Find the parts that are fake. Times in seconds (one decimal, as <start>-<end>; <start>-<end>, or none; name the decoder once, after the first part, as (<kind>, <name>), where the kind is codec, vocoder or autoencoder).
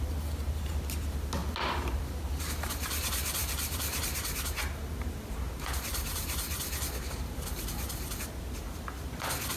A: 3.4-8.4 (vocoder, BigVGAN v2)